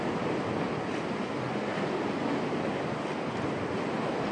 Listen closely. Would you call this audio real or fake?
real